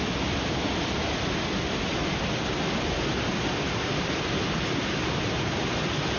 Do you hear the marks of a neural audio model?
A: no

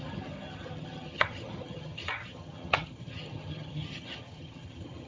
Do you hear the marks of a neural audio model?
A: yes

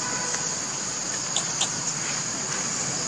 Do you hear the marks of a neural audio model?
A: no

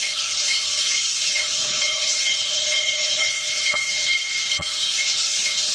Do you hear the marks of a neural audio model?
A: yes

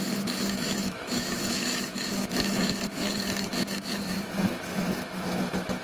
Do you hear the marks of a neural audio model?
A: yes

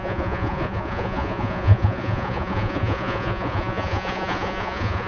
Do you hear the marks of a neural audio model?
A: yes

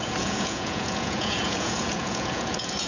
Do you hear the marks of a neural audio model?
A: yes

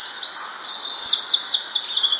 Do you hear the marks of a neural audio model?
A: no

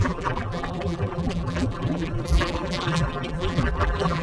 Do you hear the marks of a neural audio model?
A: yes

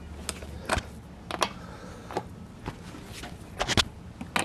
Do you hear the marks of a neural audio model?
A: no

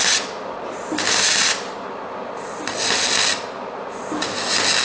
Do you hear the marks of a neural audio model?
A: no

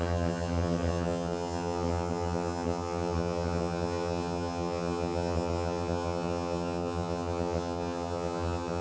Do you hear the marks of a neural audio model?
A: yes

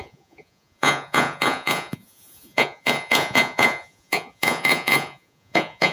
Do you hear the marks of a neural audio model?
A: yes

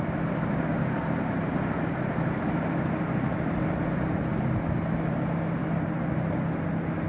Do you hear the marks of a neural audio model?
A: no